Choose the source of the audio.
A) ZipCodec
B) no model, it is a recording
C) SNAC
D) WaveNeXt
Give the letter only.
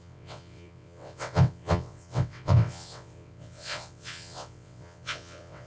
D